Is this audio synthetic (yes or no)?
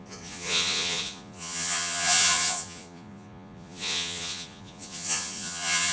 yes